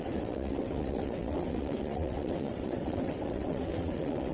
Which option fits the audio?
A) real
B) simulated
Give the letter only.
B